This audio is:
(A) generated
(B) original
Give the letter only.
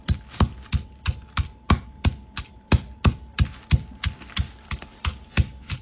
B